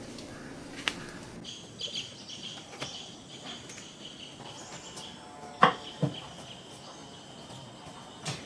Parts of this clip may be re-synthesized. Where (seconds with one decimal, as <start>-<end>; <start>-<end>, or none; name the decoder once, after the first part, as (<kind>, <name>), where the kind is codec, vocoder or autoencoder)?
7.0-7.8 (vocoder, BigVGAN v2)